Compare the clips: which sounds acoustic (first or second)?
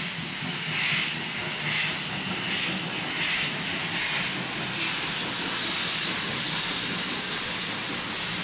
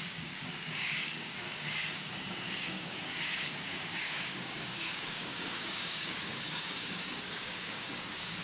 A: first